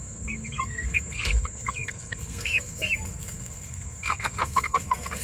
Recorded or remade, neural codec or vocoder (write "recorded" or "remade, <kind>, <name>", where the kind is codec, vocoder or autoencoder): remade, codec, SNAC